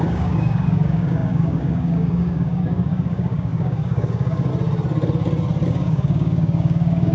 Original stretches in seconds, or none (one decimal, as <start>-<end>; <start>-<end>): 4.5-5.7